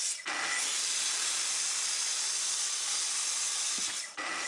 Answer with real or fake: real